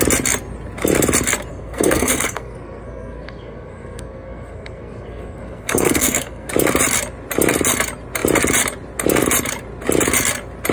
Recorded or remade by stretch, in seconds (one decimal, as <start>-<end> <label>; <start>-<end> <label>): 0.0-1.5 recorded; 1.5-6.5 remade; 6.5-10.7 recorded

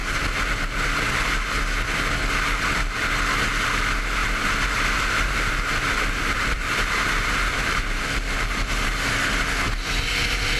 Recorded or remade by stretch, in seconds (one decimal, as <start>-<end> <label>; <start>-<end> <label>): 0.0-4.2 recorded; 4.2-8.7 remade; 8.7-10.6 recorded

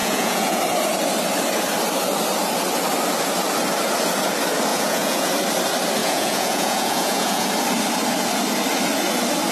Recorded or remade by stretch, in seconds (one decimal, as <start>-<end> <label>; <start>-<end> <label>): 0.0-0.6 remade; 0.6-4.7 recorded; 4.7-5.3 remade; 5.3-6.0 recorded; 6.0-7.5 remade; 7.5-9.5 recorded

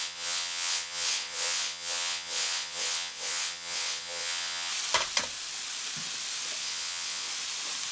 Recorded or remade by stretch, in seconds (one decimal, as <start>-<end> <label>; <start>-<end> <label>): 0.0-4.7 remade; 4.7-6.6 recorded; 6.6-7.3 remade; 7.3-7.9 recorded

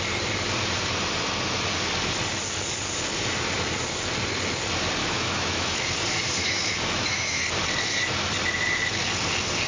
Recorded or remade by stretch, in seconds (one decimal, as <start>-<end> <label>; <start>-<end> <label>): 0.0-5.0 recorded; 5.0-5.8 remade; 5.8-6.4 recorded; 6.4-7.4 remade; 7.4-9.7 recorded

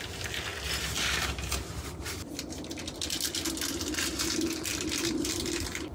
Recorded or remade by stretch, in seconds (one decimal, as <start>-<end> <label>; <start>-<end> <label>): 0.0-4.7 recorded; 4.7-5.4 remade; 5.4-5.9 recorded

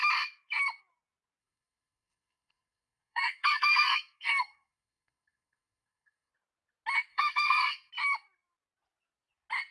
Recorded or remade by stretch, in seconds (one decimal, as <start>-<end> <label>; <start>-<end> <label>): 0.0-1.4 recorded; 1.4-6.3 remade; 6.3-7.1 recorded; 7.1-7.9 remade; 7.9-9.7 recorded